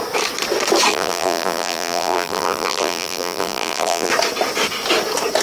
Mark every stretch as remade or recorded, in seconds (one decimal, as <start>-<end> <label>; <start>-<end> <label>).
0.0-0.9 recorded; 0.9-4.1 remade; 4.1-5.4 recorded